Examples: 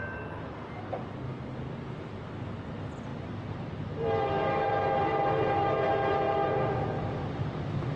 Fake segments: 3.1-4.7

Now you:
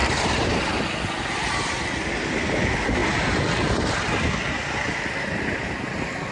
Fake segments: 0.0-0.6